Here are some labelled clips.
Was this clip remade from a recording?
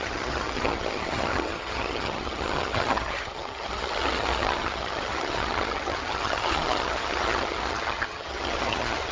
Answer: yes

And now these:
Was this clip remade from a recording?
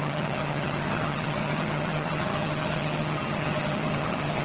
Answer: yes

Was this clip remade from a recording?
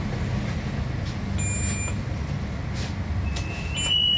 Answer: no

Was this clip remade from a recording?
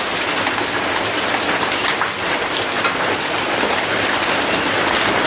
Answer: no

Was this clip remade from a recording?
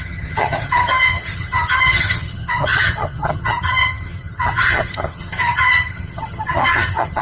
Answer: yes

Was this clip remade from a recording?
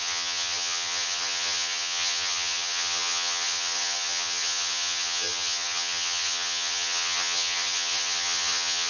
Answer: yes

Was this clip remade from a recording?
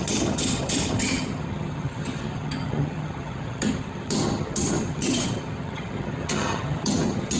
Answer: yes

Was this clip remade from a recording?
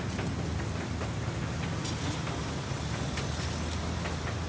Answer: no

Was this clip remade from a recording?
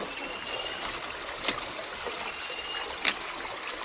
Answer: no